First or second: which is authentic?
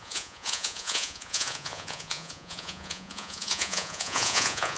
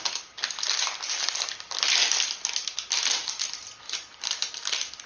second